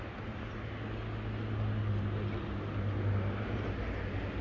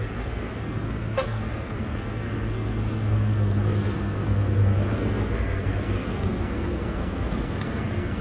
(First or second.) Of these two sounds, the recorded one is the first